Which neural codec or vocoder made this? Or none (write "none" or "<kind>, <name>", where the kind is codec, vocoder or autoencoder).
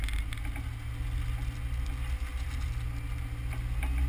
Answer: none